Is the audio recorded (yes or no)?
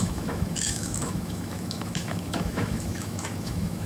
no